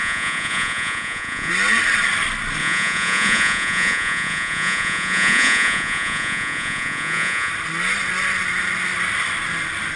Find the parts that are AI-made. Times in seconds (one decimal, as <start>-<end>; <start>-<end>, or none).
0.0-1.5; 2.6-7.5